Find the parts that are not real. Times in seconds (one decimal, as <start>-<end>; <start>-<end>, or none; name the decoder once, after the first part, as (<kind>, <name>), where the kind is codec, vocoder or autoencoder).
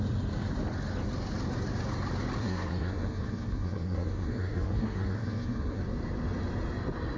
2.4-5.8 (codec, SNAC)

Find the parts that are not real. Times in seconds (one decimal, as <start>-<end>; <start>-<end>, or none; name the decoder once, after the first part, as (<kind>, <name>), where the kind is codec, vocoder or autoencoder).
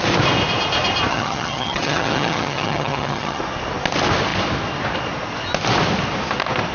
1.1-3.4 (vocoder, HiFi-GAN)